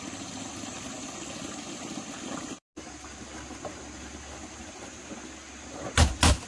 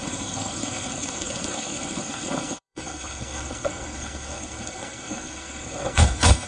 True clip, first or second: first